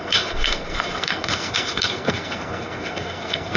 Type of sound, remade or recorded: remade